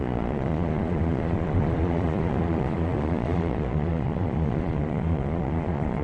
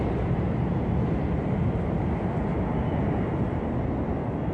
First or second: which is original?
second